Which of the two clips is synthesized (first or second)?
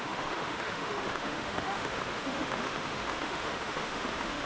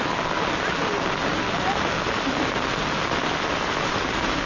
first